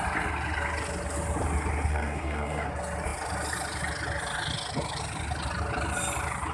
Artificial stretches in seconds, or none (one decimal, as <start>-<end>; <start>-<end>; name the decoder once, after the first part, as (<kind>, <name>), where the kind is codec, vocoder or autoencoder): 1.9-2.7 (codec, SNAC)